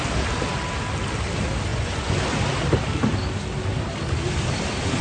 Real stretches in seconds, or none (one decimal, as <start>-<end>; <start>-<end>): 0.0-1.7; 2.2-5.0